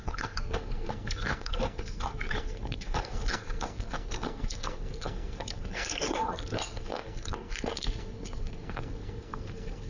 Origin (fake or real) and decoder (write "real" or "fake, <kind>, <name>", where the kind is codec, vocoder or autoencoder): fake, codec, SNAC